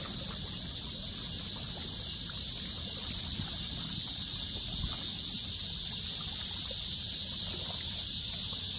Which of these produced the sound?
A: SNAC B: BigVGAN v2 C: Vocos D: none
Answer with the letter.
D